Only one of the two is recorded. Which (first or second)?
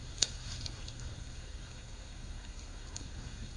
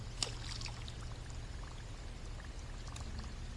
second